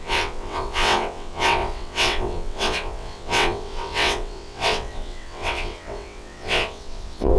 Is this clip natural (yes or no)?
no